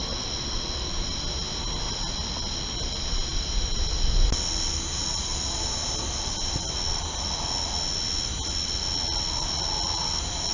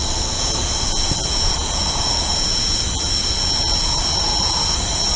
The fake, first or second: second